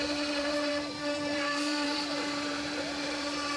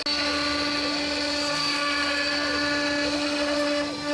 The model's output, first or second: first